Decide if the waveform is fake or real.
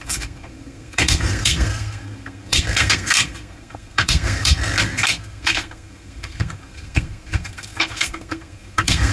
fake